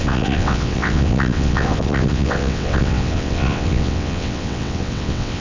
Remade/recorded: remade